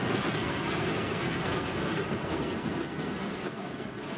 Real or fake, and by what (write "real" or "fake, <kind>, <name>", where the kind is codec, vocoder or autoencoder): fake, codec, SNAC